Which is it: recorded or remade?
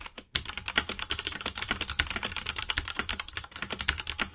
recorded